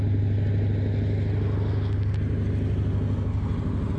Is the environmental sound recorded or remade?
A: recorded